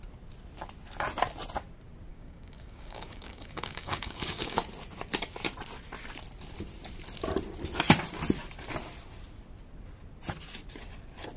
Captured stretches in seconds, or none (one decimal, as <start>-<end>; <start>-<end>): 0.0-2.1; 4.6-11.4